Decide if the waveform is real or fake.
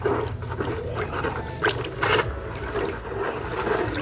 real